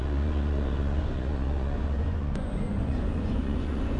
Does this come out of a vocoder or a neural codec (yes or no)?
yes